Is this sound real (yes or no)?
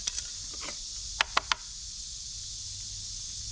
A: yes